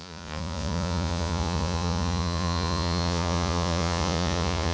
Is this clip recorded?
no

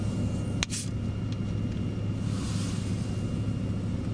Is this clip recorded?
yes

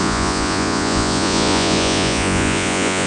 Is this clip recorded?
no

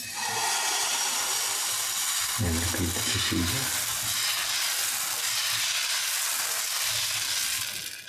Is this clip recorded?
yes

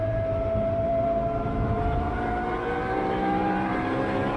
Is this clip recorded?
no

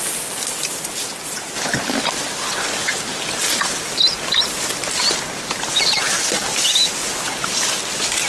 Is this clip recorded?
yes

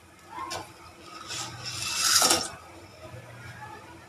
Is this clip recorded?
yes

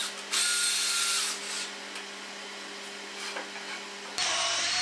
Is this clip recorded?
yes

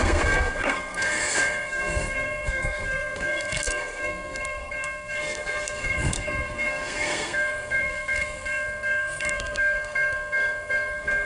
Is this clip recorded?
no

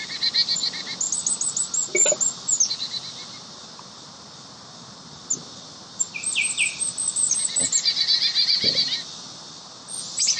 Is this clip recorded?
yes